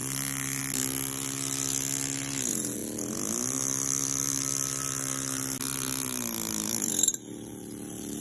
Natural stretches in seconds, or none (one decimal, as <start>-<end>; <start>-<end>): 0.0-8.2